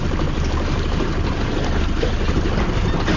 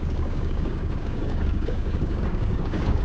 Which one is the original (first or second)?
first